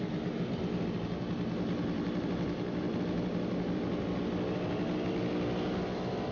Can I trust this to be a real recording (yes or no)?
yes